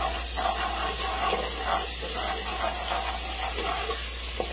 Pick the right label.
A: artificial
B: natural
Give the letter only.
B